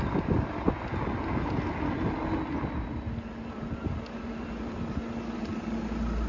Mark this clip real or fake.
real